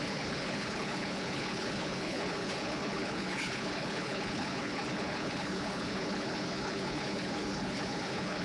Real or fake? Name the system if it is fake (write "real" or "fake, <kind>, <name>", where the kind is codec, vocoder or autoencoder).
fake, codec, HILCodec